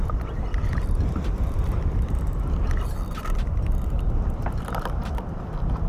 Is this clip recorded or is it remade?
remade